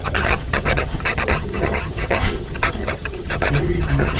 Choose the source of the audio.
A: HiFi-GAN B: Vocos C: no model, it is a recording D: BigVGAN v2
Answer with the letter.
A